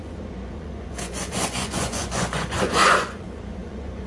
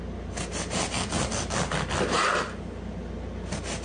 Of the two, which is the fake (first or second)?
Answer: first